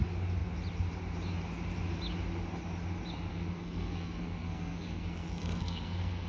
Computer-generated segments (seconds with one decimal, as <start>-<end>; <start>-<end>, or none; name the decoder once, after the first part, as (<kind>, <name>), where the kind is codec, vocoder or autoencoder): 3.3-6.3 (codec, SNAC)